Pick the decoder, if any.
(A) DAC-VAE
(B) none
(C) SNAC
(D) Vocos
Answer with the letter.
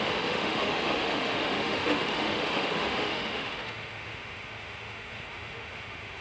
A